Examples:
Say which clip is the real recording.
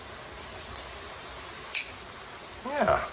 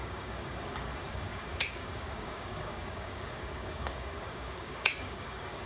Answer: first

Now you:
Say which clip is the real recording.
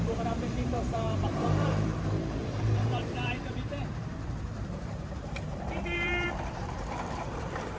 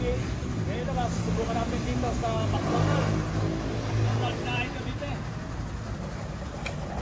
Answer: second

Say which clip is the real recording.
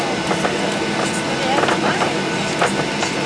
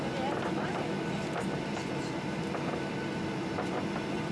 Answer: first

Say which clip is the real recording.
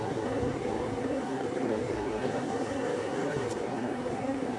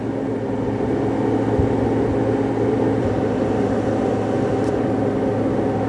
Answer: second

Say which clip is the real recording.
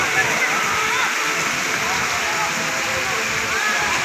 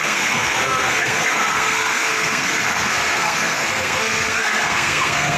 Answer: first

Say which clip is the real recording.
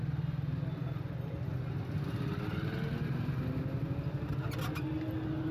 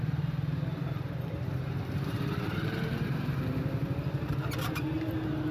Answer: first